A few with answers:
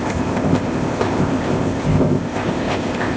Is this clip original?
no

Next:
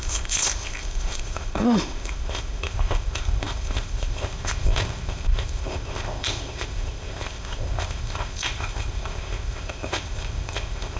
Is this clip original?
no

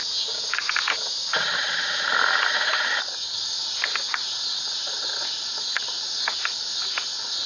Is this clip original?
yes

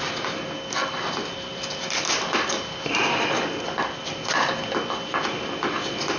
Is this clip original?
yes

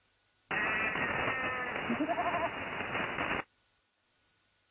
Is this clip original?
yes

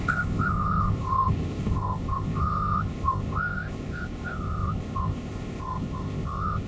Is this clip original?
no